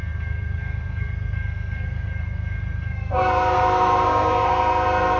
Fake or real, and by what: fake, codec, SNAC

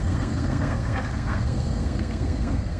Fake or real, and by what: fake, codec, SNAC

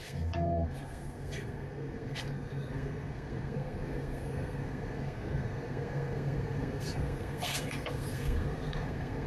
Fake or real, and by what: fake, codec, SNAC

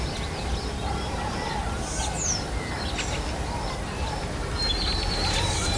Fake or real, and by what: real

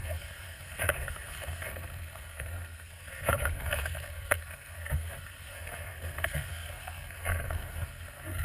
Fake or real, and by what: fake, codec, SNAC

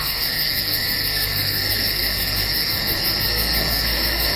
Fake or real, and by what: fake, codec, SNAC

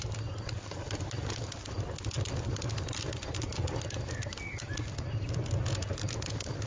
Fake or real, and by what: real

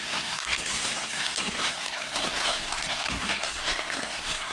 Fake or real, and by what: fake, codec, SNAC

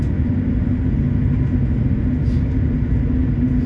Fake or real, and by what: real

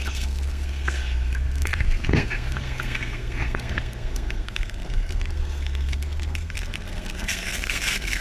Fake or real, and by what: fake, codec, SNAC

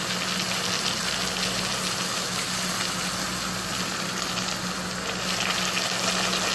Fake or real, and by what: real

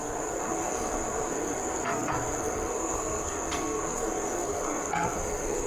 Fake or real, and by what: fake, codec, SNAC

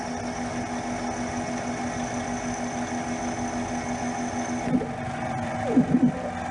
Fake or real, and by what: real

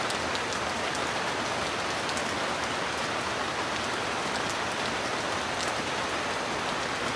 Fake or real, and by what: real